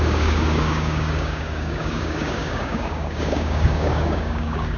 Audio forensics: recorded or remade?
remade